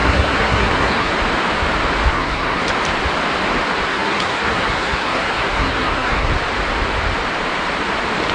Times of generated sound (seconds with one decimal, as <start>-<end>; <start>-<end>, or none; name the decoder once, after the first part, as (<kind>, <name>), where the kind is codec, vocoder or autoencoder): 0.0-1.1 (codec, SNAC); 2.1-2.6; 3.9-6.3